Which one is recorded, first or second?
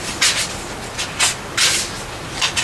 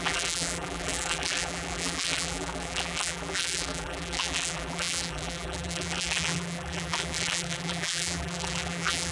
first